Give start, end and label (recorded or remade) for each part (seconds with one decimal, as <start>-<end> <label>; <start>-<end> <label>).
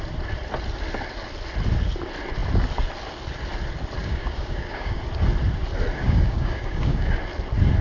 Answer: 0.0-4.0 recorded; 4.0-5.0 remade; 5.0-6.0 recorded; 6.0-7.2 remade; 7.2-7.8 recorded